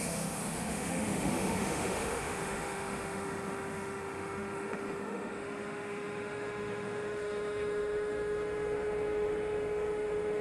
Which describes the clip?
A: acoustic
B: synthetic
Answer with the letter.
B